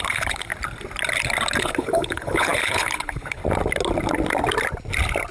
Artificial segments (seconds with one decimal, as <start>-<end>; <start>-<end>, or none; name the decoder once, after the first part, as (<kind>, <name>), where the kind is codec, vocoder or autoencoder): 0.0-0.5 (codec, HILCodec); 1.6-3.4